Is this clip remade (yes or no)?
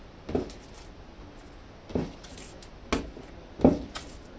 no